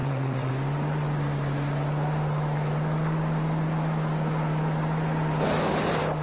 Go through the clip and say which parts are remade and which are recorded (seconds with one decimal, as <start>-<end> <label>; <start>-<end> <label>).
0.0-0.5 remade; 0.5-6.2 recorded